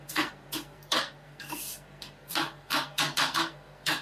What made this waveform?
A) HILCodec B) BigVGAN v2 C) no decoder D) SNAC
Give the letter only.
D